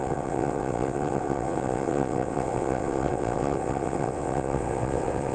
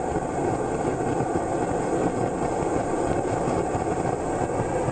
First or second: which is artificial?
first